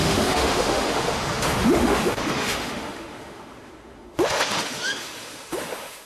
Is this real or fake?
fake